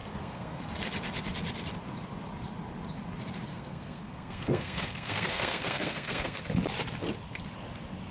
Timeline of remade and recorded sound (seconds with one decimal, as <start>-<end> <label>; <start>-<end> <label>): 0.0-0.7 remade; 0.7-3.5 recorded; 3.5-6.4 remade; 6.4-8.1 recorded